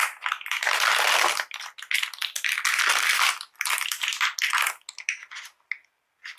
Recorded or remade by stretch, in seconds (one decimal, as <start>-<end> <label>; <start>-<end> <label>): 0.0-6.4 recorded